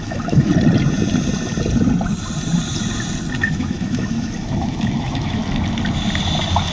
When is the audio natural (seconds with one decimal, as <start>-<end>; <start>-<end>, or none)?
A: 0.5-3.4; 5.4-6.7